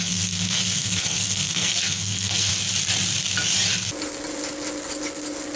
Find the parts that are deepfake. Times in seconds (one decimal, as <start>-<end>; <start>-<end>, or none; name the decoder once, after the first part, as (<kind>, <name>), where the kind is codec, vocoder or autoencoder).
0.0-2.5 (codec, SNAC)